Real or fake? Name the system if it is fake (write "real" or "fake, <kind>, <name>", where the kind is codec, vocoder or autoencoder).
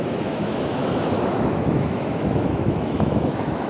fake, autoencoder, DAC-VAE